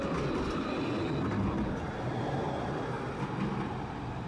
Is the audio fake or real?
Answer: real